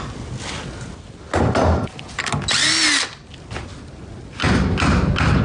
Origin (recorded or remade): recorded